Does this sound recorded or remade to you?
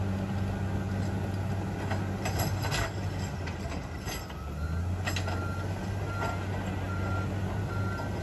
recorded